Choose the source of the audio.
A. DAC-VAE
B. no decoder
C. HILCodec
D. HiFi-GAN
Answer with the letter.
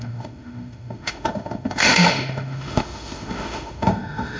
A